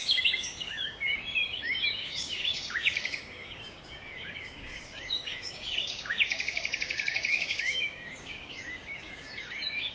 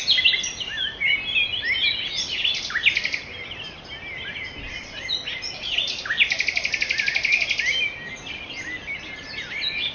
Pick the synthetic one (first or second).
first